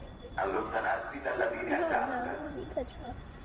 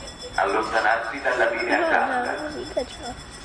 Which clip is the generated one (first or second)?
first